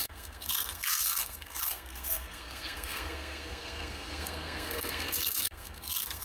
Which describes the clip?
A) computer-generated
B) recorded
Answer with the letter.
A